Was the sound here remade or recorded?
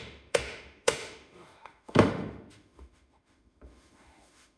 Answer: remade